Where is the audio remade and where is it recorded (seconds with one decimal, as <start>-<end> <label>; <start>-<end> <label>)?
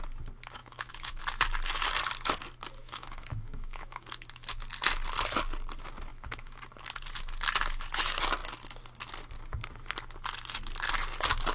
0.0-0.6 recorded; 0.6-1.2 remade; 1.2-2.8 recorded; 2.8-4.6 remade; 4.6-6.1 recorded; 6.1-6.6 remade; 6.6-11.5 recorded